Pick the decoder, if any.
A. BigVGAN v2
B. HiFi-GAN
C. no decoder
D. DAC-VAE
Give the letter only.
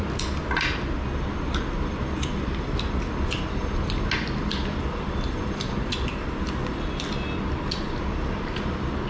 C